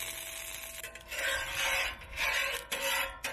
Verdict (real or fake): real